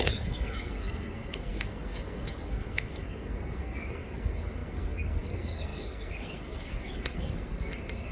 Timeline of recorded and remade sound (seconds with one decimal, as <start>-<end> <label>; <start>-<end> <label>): 0.0-8.1 remade